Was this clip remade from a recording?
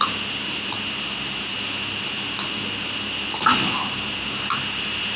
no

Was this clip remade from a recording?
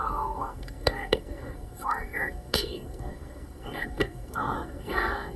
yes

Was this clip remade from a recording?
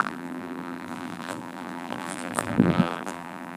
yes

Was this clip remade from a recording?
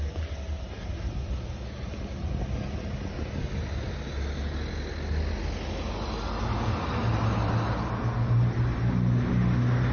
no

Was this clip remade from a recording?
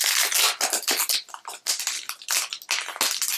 no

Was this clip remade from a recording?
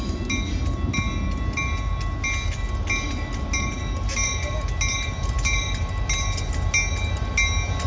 no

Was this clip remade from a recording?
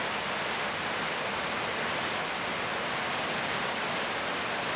no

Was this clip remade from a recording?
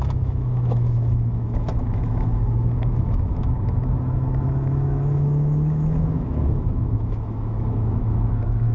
yes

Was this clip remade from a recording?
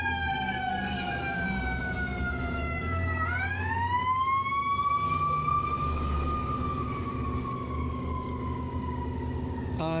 yes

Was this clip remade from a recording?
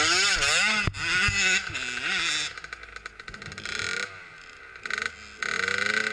no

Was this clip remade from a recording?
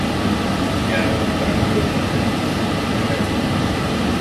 no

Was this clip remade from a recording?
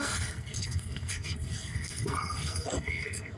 yes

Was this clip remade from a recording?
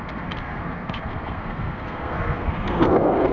yes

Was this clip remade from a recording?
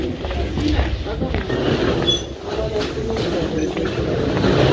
no